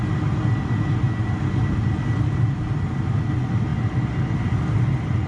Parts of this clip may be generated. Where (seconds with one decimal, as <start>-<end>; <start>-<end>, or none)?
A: none